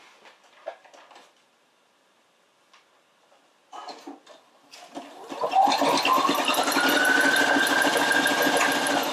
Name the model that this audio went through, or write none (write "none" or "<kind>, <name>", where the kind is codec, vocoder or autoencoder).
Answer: none